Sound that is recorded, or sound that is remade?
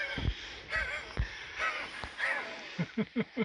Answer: recorded